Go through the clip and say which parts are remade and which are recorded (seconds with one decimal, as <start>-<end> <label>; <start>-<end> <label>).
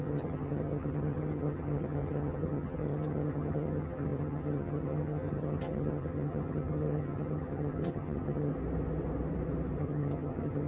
0.0-8.5 remade; 8.5-9.8 recorded; 9.8-10.7 remade